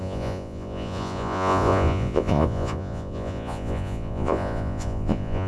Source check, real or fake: fake